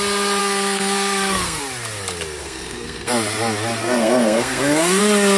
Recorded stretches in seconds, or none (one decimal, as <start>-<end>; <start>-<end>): 0.0-0.4; 1.6-2.4; 3.1-3.8; 5.0-5.4